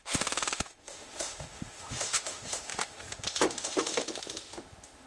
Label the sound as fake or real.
fake